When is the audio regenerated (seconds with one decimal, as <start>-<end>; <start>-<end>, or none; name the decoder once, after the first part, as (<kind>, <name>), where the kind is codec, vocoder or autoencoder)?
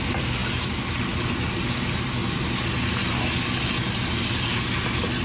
none